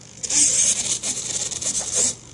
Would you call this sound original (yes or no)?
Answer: yes